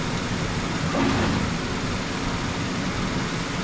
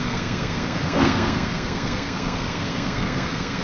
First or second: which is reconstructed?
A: second